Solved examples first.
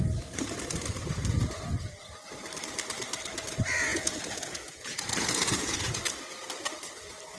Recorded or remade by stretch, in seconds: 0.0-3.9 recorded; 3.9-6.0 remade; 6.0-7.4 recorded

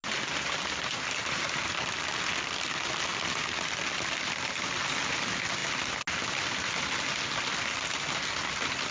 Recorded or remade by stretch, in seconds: 0.0-8.9 recorded

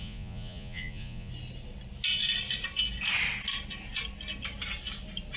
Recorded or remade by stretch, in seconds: 0.0-1.3 remade; 1.3-5.4 recorded

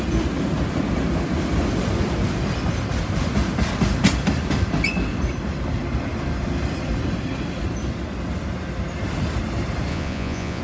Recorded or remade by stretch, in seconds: 0.0-9.9 recorded; 9.9-10.6 remade

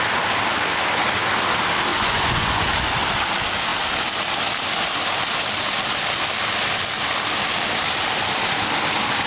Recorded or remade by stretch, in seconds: 0.0-1.9 recorded; 1.9-2.7 remade; 2.7-9.3 recorded

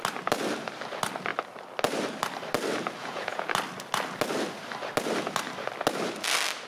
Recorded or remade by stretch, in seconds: 0.0-3.0 recorded; 3.0-3.5 remade; 3.5-6.7 recorded

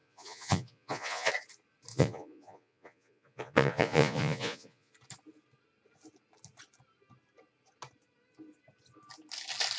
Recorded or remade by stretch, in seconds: 0.0-1.3 remade; 1.3-1.9 recorded; 1.9-4.9 remade; 4.9-9.8 recorded